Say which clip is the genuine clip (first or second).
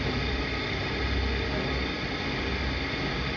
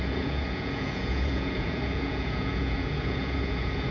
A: first